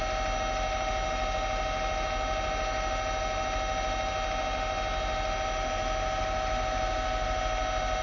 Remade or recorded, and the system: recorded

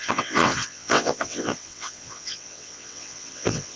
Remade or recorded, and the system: remade, vocoder, WaveNeXt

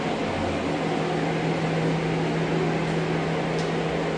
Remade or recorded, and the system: recorded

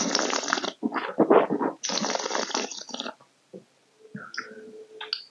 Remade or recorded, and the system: recorded